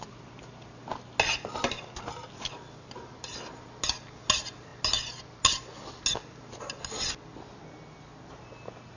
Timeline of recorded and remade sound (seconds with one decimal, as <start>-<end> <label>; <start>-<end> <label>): 0.0-9.0 recorded